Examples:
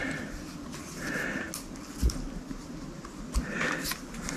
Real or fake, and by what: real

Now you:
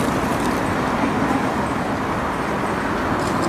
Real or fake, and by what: real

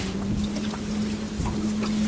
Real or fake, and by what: real